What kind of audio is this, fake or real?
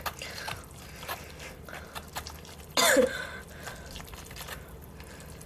real